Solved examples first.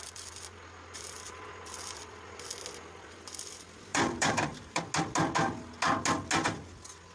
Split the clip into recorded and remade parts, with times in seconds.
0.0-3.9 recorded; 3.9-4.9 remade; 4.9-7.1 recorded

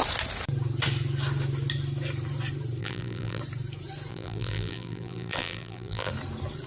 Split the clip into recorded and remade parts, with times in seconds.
0.0-2.8 recorded; 2.8-3.4 remade; 3.4-4.1 recorded; 4.1-6.1 remade; 6.1-6.7 recorded

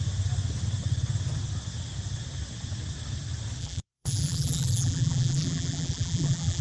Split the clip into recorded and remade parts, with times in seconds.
0.0-3.6 recorded; 3.6-6.6 remade

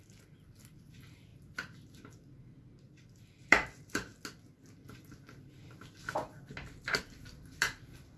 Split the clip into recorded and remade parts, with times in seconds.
0.0-1.3 remade; 1.3-3.1 recorded; 3.1-4.1 remade; 4.1-6.9 recorded; 6.9-8.2 remade

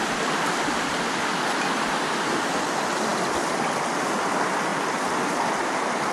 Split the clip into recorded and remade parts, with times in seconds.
0.0-6.1 recorded